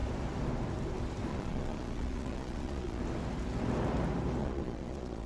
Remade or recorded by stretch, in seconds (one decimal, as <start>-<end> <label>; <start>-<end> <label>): 0.0-1.3 recorded; 1.3-3.0 remade; 3.0-4.4 recorded; 4.4-5.3 remade